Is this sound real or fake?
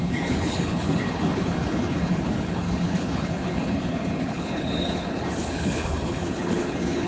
fake